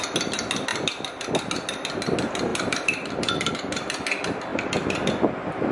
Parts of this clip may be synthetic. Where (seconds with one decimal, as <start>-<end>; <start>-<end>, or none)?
0.7-1.3; 2.5-3.5; 4.5-5.1